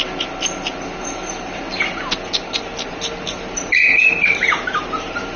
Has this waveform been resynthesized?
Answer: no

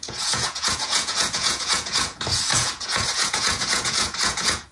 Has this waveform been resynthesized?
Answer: yes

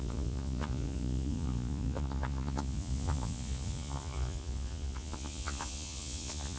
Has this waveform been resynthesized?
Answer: yes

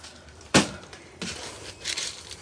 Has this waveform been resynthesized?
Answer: no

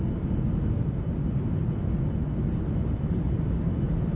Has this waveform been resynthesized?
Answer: no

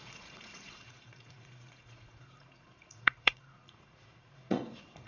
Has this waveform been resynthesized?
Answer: yes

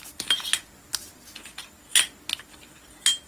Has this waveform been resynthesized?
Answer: no